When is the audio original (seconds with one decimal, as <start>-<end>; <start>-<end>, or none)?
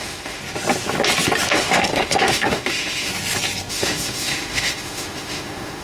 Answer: 0.4-1.5; 3.1-3.7